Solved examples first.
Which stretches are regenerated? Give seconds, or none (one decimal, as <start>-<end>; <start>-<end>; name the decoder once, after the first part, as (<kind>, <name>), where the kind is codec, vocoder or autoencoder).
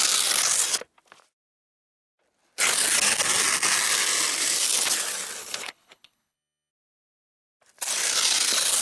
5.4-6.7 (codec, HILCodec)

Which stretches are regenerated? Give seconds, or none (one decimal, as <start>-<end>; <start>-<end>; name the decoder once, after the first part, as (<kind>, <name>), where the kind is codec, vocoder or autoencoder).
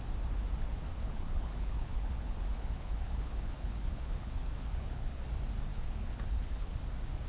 0.9-5.3 (codec, HILCodec); 5.7-6.8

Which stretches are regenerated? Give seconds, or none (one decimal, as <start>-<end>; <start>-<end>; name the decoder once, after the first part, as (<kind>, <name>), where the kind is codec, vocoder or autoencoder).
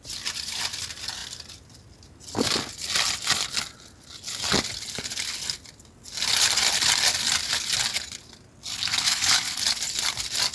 8.7-9.6 (codec, HILCodec)